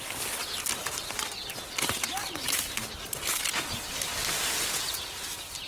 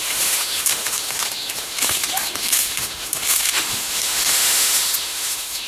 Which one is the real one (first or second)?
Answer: first